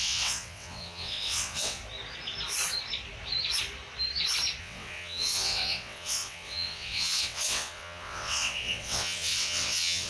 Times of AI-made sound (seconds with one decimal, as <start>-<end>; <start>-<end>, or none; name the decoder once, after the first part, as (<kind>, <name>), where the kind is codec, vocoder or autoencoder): 0.0-1.8 (vocoder, WaveNeXt); 4.6-10.1